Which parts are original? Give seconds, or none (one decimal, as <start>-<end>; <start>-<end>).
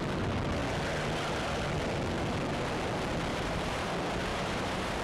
0.0-3.3; 3.9-4.3